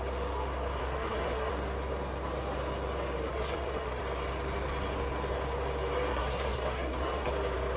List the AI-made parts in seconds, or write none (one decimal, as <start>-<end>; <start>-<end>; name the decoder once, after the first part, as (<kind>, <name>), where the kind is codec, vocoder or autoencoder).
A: 0.8-1.5 (codec, SNAC); 3.3-4.0; 6.1-7.3

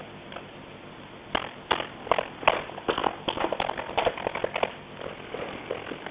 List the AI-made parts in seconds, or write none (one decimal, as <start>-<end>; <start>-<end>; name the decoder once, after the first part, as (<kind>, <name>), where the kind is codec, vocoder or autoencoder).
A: none

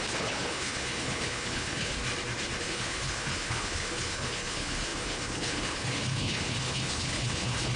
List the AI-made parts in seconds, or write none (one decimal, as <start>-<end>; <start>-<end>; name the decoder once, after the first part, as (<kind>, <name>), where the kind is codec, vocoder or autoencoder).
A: 0.0-2.0 (codec, HILCodec); 2.6-7.8

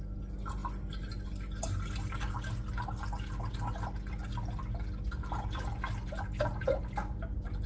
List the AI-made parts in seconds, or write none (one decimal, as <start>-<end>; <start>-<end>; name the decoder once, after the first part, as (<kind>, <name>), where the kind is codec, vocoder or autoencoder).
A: none

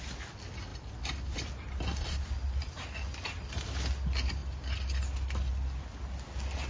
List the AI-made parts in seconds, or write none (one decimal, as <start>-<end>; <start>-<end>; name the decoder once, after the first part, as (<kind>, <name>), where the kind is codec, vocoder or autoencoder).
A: none

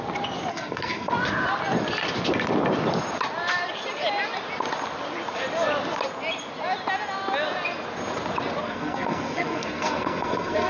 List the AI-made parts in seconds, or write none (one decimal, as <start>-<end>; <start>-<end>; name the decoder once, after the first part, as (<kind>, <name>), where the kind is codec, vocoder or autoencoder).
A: 0.5-1.1 (codec, SNAC); 8.6-10.7

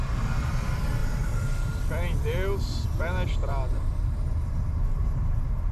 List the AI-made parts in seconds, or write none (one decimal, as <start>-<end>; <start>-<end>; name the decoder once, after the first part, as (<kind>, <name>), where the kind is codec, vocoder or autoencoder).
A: 1.0-1.9 (vocoder, BigVGAN v2); 3.7-5.2

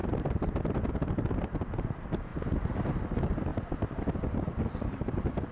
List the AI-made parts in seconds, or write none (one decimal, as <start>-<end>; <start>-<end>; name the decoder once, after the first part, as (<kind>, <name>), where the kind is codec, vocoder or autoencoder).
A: 0.0-1.3 (vocoder, BigVGAN v2); 2.3-2.9; 3.5-4.2